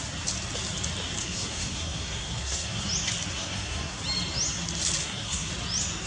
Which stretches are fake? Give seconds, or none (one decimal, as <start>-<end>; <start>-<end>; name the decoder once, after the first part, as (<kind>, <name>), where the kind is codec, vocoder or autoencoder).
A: 1.2-2.9 (codec, SNAC); 3.3-4.0; 5.0-5.5